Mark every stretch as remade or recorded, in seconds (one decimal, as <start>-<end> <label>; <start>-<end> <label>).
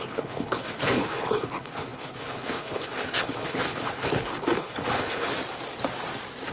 0.0-5.3 remade; 5.3-6.5 recorded